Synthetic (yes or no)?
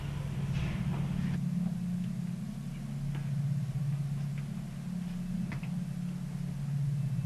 no